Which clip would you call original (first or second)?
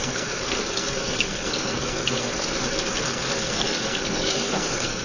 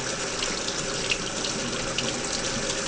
second